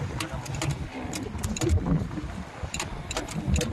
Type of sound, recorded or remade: recorded